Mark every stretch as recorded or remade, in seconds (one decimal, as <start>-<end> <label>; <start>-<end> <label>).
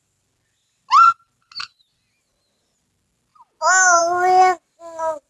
0.0-5.3 recorded